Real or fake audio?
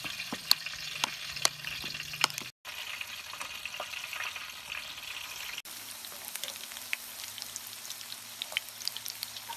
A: real